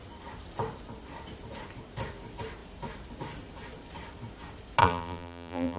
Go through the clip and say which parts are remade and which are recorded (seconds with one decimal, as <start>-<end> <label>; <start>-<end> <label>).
0.0-4.8 recorded; 4.8-5.8 remade